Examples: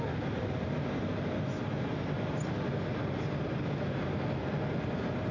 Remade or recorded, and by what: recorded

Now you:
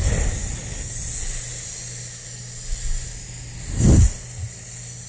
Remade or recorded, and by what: recorded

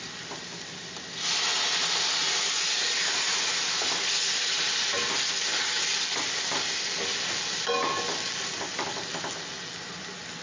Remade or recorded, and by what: recorded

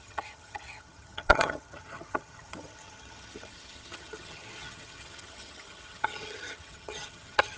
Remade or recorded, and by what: remade, vocoder, HiFi-GAN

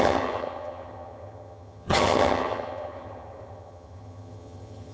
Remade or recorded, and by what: remade, vocoder, HiFi-GAN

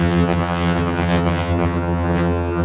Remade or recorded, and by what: remade, vocoder, HiFi-GAN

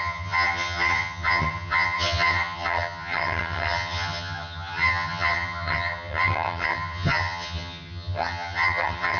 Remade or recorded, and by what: remade, vocoder, HiFi-GAN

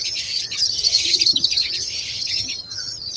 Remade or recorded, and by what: remade, vocoder, HiFi-GAN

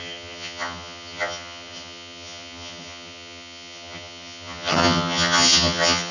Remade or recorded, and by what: remade, vocoder, HiFi-GAN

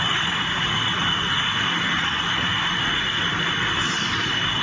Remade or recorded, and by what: recorded